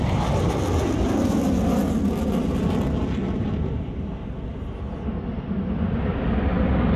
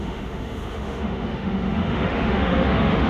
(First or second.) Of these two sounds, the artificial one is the second